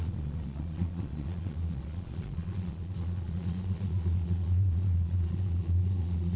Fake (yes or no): yes